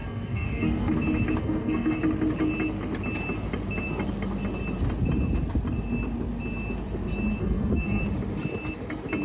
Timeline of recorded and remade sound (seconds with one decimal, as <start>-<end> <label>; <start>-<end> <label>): 0.0-0.9 remade; 0.9-1.4 recorded; 1.4-2.0 remade; 2.0-7.4 recorded; 7.4-8.0 remade; 8.0-9.2 recorded